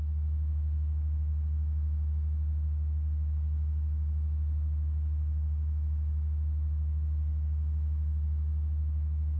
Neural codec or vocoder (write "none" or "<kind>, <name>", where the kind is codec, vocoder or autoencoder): none